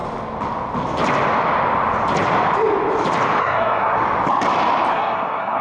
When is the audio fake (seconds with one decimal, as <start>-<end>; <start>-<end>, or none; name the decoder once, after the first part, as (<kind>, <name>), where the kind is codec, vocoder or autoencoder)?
3.4-4.0 (codec, SNAC); 4.9-5.6